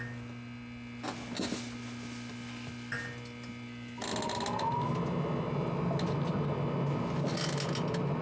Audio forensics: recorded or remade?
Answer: recorded